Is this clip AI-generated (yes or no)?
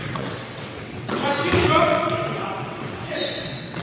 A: yes